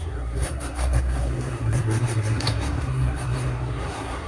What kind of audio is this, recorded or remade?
remade